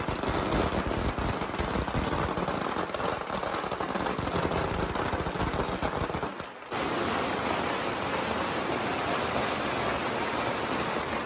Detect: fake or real real